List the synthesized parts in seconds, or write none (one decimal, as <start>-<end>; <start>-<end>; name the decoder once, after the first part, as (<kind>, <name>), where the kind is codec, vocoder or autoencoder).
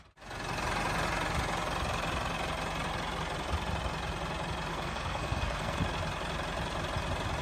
4.7-5.8 (codec, SNAC)